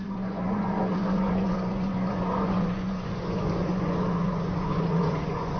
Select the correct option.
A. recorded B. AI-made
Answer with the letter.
B